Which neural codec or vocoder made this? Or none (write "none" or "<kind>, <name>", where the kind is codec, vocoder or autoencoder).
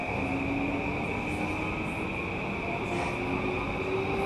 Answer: none